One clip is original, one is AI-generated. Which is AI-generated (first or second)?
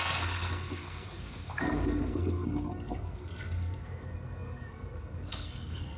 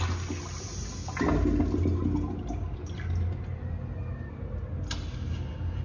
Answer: first